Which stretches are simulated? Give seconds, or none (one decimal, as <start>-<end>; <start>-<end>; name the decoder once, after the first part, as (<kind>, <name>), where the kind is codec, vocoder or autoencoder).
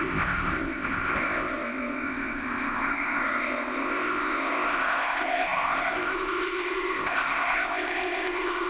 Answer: 0.0-8.7 (codec, ZipCodec)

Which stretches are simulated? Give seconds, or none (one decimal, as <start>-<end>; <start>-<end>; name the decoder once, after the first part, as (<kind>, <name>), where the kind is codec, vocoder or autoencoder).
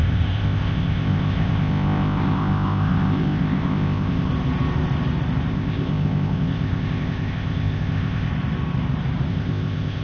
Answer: 0.0-4.3 (codec, ZipCodec); 5.5-8.3; 9.3-10.0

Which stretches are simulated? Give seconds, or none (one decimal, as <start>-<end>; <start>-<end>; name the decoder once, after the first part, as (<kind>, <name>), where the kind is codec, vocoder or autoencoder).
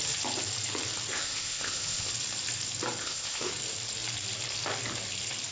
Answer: 1.1-2.1 (codec, ZipCodec); 3.0-3.5